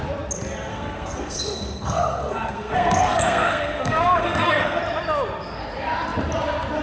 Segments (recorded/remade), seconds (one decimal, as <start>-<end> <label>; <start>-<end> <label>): 0.0-0.7 recorded; 0.7-4.8 remade; 4.8-6.8 recorded